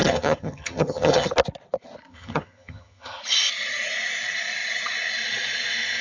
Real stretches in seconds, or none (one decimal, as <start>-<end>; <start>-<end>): 1.3-2.1; 3.2-6.0